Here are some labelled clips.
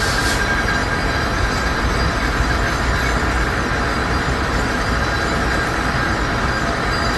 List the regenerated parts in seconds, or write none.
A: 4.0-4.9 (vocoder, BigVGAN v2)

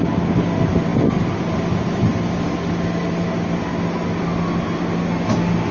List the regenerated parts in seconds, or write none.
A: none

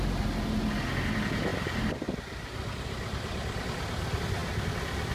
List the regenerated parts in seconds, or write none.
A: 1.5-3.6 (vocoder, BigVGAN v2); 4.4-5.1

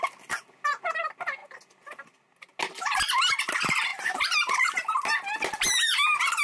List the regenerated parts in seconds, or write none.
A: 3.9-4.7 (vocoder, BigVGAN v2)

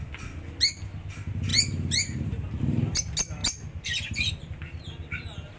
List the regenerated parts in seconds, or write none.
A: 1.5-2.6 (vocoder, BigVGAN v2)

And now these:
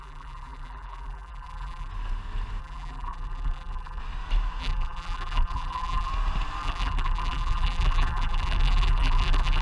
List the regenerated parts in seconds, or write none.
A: 0.0-1.9 (vocoder, BigVGAN v2); 2.6-4.0; 4.6-6.1; 6.6-9.6

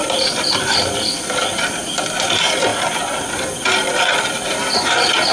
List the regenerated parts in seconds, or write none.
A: 0.0-2.3 (vocoder, BigVGAN v2)